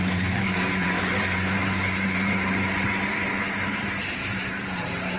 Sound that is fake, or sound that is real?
fake